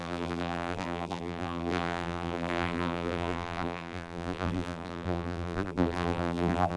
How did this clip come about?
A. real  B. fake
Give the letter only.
B